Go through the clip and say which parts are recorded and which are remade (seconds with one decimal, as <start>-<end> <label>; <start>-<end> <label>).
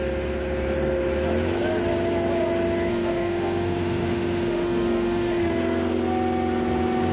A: 0.0-2.9 recorded; 2.9-5.5 remade; 5.5-7.1 recorded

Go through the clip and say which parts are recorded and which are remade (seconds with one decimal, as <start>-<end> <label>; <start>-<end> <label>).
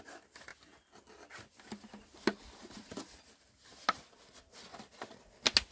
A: 0.0-5.7 recorded